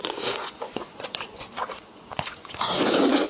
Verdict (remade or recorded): remade